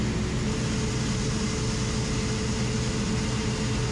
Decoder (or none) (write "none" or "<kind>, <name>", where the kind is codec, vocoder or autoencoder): none